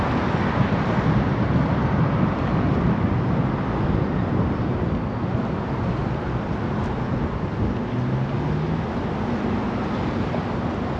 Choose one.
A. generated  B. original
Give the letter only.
B